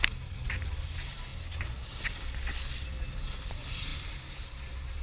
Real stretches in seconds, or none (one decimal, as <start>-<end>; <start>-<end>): 1.3-3.5